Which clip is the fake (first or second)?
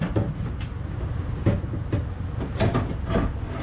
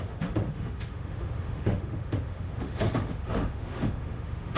second